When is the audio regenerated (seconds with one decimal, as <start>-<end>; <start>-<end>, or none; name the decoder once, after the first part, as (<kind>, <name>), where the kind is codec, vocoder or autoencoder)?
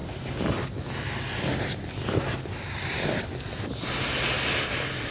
none